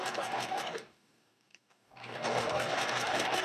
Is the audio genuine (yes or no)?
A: no